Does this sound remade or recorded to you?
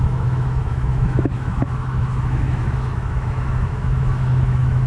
remade